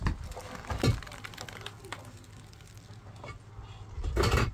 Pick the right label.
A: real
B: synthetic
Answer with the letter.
A